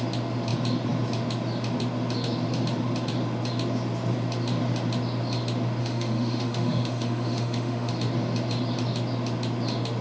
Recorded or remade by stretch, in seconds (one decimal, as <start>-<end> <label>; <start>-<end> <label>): 0.0-5.8 recorded; 5.8-7.9 remade; 7.9-10.0 recorded